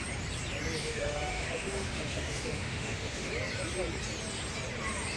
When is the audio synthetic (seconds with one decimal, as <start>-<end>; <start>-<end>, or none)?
0.8-3.3